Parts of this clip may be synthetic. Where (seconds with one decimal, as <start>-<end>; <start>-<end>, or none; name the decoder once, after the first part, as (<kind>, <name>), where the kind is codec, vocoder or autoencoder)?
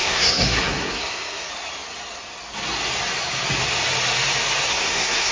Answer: 0.0-1.5 (codec, SNAC); 4.7-5.3